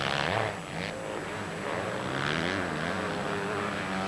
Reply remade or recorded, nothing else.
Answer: recorded